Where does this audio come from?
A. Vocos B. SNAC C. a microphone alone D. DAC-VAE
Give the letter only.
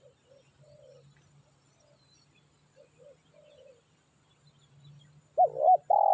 C